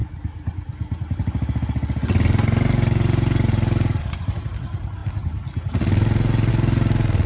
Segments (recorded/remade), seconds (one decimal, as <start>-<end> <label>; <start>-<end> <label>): 0.0-7.3 recorded